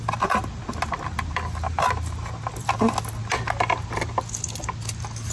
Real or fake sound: real